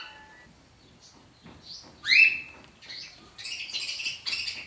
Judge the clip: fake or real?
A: real